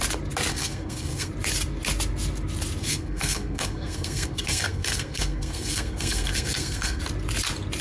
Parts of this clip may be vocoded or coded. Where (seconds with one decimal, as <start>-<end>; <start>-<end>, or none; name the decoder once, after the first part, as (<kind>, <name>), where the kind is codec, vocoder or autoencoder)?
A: 0.5-1.3 (codec, SNAC); 2.8-7.0